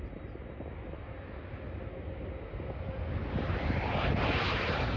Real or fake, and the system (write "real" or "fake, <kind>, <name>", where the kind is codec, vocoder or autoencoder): real